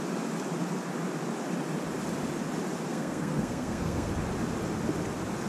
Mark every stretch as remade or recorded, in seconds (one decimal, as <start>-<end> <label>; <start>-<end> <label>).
0.0-2.9 recorded; 2.9-4.1 remade; 4.1-5.5 recorded